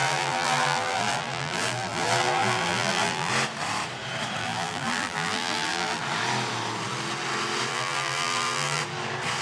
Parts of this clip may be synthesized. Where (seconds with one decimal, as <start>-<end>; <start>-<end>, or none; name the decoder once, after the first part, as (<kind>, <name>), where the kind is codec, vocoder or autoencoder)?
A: 0.0-3.3 (vocoder, BigVGAN v2); 4.4-6.0; 7.7-8.8